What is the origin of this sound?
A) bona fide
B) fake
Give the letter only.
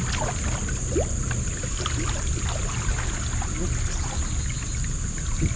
A